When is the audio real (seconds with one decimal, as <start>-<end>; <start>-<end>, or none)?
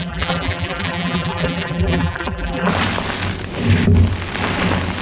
2.7-5.0